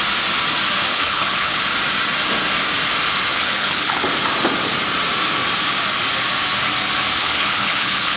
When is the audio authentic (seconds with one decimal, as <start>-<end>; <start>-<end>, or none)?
0.0-0.9; 1.6-3.3; 4.0-7.2